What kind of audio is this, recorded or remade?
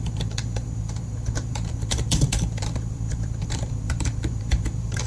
remade